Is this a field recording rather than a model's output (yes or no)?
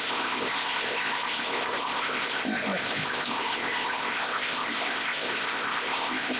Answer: no